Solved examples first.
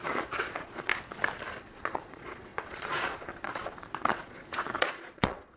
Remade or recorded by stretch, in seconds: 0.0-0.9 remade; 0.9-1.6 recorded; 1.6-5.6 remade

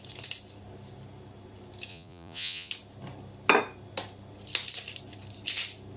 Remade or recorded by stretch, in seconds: 0.0-1.9 recorded; 1.9-2.7 remade; 2.7-6.0 recorded

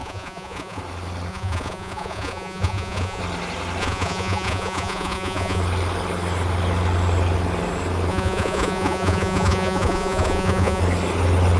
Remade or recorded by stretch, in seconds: 0.0-0.8 remade; 0.8-1.3 recorded; 1.3-3.2 remade; 3.2-3.8 recorded; 3.8-5.6 remade; 5.6-8.1 recorded; 8.1-10.8 remade; 10.8-11.6 recorded